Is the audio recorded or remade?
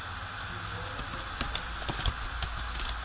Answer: recorded